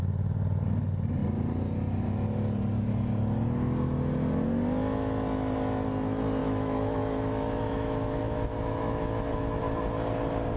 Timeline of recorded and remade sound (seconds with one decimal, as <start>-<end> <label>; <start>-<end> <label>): 0.0-6.4 recorded; 6.4-9.6 remade; 9.6-10.6 recorded